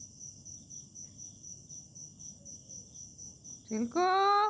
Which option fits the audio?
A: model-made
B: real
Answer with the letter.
B